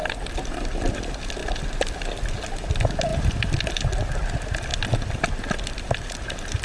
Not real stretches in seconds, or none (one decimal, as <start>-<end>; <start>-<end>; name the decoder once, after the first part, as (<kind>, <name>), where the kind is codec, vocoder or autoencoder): 0.0-0.9 (vocoder, BigVGAN v2); 1.4-2.3